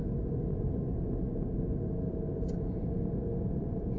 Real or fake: real